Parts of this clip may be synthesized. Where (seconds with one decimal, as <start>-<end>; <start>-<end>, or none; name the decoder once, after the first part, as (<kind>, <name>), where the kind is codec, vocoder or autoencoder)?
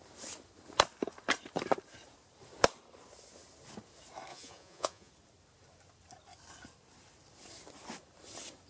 4.3-5.1 (vocoder, Vocos)